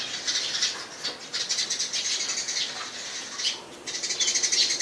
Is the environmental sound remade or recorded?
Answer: recorded